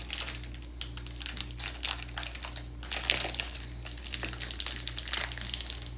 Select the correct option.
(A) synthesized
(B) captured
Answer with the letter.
B